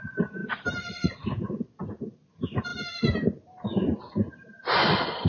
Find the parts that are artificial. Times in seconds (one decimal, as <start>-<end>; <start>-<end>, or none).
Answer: none

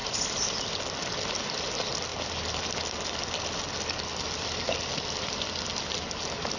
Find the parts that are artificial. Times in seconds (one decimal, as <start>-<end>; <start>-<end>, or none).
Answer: none

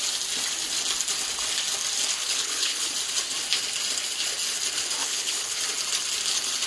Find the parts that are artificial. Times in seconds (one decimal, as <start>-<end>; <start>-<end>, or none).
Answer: 2.2-2.9; 5.0-5.6